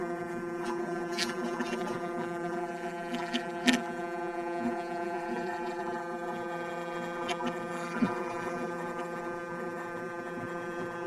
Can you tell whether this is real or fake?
fake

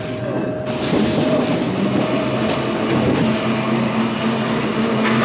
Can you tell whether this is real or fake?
real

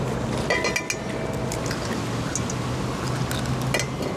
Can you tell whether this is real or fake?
real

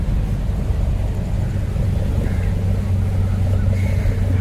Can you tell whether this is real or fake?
real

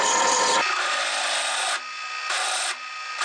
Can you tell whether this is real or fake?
real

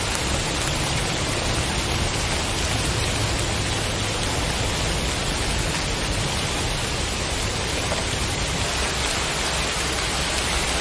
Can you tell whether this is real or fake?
real